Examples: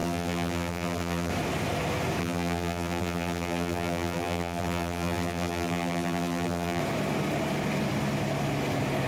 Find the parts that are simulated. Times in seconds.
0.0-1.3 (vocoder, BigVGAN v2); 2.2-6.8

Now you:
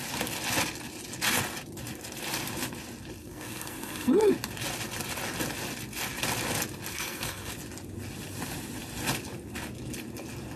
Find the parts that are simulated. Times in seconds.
3.2-4.3 (codec, SNAC); 6.9-7.5